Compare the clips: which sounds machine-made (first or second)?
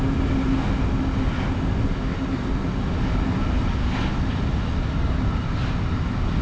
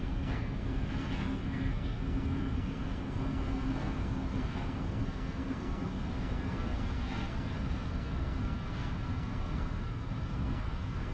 second